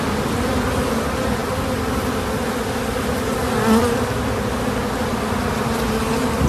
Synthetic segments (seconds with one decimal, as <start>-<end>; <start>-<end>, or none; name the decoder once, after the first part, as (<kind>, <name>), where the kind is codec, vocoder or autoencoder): none